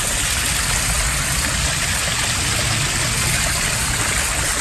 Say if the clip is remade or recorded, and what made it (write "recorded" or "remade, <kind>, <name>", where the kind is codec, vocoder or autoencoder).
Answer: recorded